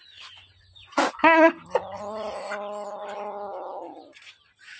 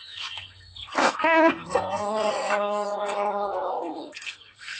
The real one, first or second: first